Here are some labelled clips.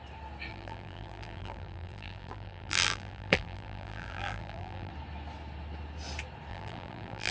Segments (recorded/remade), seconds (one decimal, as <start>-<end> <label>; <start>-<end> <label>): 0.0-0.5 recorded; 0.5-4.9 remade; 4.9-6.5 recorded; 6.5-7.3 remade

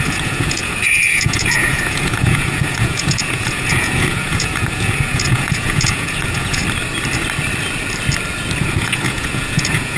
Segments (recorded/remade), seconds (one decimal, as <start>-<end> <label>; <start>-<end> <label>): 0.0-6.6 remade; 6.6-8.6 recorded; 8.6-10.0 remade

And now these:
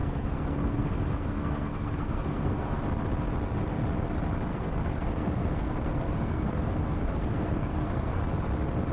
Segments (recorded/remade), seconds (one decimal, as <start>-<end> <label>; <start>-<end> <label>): 0.0-2.8 remade; 2.8-4.5 recorded; 4.5-8.2 remade; 8.2-8.9 recorded